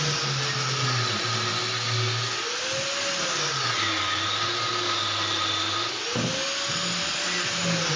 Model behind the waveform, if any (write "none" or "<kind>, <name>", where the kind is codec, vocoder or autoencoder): none